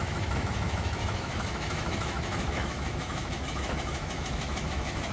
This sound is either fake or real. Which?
fake